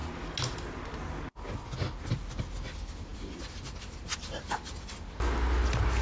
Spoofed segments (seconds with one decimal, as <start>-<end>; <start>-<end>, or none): none